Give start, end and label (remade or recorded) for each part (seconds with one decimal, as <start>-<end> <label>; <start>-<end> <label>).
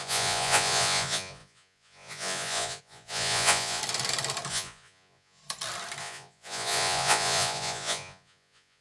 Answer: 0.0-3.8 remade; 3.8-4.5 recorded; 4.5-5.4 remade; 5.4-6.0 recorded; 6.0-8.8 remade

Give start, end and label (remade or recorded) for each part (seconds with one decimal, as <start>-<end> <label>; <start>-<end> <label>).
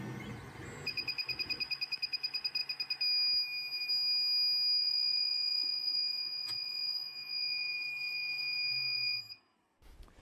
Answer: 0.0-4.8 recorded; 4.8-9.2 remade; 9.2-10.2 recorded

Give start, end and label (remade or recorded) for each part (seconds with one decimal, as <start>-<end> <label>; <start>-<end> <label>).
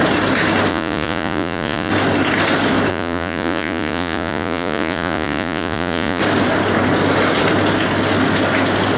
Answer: 0.0-0.7 recorded; 0.7-1.9 remade; 1.9-2.9 recorded; 2.9-6.2 remade; 6.2-9.0 recorded